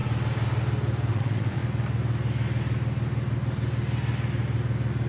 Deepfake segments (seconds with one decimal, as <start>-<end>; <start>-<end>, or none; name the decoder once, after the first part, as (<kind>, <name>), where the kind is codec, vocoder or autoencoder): 1.1-1.6 (vocoder, WaveNeXt)